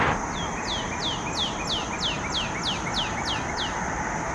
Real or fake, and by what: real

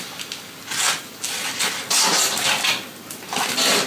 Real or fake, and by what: real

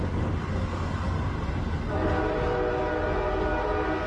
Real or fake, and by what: real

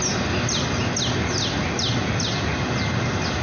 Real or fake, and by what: real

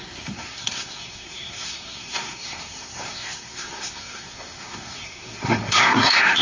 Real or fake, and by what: fake, codec, SNAC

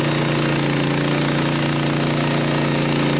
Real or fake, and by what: real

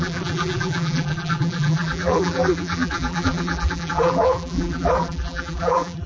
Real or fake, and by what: fake, vocoder, BigVGAN v2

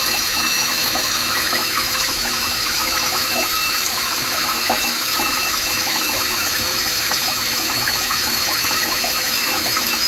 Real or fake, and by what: fake, autoencoder, DAC-VAE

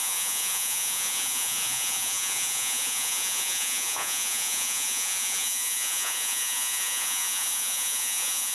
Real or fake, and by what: fake, vocoder, Vocos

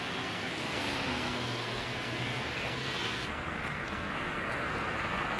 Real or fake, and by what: fake, codec, SNAC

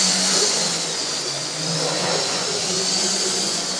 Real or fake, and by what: fake, vocoder, Vocos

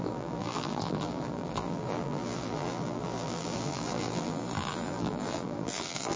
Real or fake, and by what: fake, vocoder, BigVGAN v2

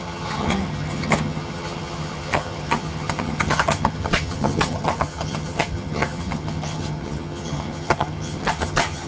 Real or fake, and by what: fake, vocoder, HiFi-GAN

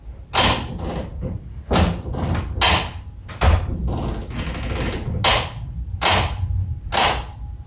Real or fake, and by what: real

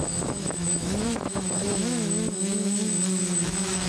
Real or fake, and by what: fake, autoencoder, DAC-VAE